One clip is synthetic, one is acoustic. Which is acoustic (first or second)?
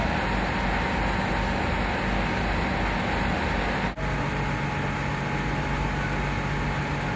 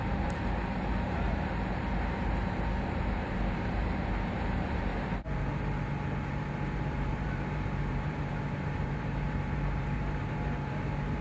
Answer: first